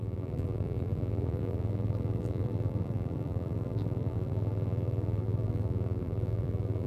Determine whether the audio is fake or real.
fake